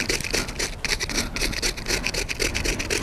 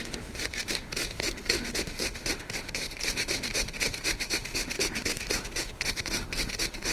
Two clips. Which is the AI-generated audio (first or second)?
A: second